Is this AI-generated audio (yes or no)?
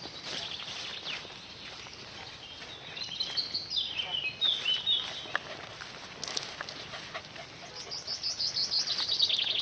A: no